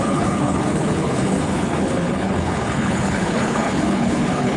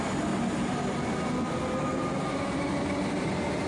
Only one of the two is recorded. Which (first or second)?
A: second